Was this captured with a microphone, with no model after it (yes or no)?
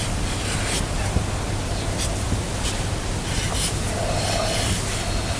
yes